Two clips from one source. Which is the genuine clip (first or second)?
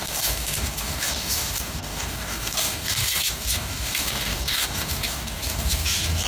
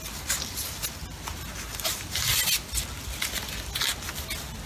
second